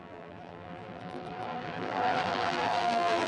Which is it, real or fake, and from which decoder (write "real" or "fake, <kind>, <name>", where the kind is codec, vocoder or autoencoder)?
fake, vocoder, BigVGAN v2